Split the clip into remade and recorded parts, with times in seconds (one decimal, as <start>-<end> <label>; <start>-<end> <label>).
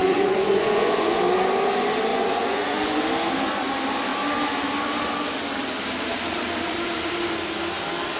0.0-1.2 remade; 1.2-2.1 recorded; 2.1-3.0 remade; 3.0-8.2 recorded